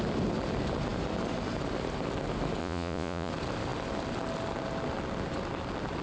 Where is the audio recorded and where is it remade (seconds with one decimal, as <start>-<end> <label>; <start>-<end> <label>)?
0.0-2.6 recorded; 2.6-3.3 remade; 3.3-6.0 recorded